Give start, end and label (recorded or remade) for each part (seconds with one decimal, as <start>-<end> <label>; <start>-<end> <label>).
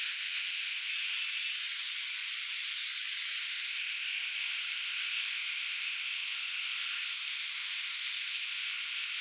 0.0-0.9 remade; 0.9-3.4 recorded; 3.4-9.2 remade